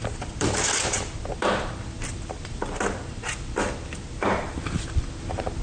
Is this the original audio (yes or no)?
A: no